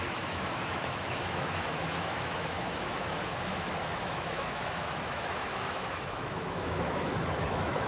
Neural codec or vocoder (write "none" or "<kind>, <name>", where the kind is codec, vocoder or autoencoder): autoencoder, DAC-VAE